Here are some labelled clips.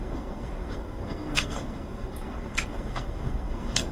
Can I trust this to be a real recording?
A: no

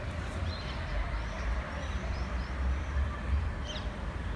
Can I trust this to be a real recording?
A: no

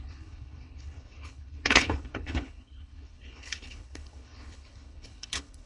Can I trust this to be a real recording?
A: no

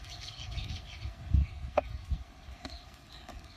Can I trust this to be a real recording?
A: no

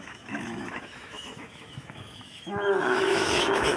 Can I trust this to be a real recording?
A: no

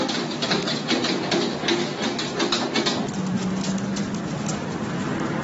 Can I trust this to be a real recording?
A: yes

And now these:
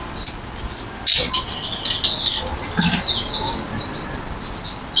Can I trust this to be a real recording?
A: yes